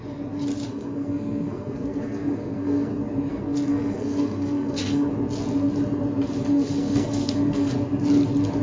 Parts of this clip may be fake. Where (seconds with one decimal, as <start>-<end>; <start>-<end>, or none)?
0.7-2.9; 3.3-5.1; 6.5-7.7